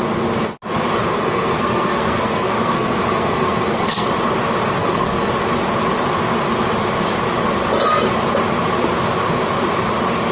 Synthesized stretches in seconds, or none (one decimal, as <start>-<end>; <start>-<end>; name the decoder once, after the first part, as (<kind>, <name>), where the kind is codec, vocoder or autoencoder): 1.1-4.1 (codec, SNAC); 4.8-5.3